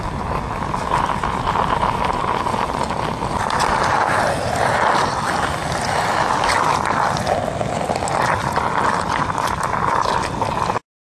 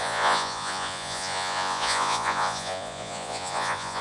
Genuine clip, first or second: first